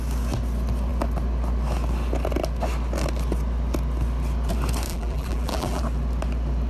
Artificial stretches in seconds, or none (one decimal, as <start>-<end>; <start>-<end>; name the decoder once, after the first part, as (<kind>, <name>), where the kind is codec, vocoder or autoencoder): 4.9-5.8 (vocoder, BigVGAN v2)